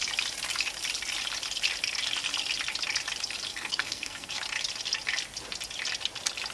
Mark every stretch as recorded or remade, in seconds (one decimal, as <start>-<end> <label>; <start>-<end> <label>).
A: 0.0-3.5 recorded; 3.5-4.4 remade; 4.4-6.5 recorded